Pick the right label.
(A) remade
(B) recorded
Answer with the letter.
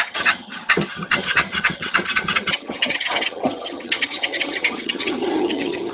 A